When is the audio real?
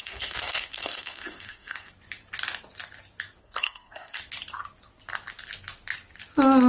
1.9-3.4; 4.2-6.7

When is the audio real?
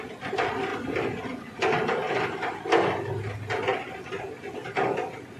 0.0-5.4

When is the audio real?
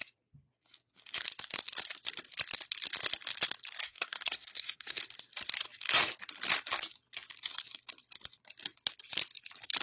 0.0-3.8; 5.0-9.8